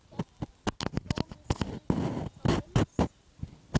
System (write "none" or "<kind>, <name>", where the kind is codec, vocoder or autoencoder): none